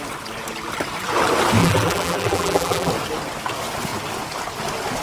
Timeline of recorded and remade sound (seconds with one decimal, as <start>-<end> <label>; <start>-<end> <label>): 0.0-1.6 recorded; 1.6-2.9 remade; 2.9-5.0 recorded